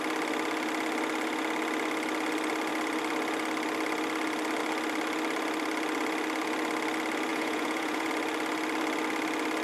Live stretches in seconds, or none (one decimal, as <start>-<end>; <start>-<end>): 0.0-7.3; 8.1-9.6